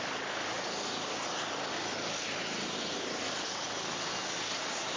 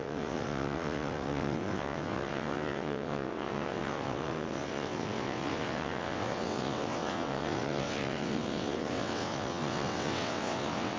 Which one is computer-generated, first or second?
second